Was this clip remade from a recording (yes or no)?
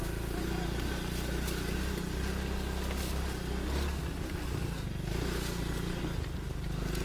no